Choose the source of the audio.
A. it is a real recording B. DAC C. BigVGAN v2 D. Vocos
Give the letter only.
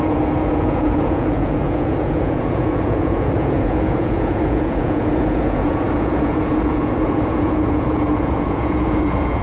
D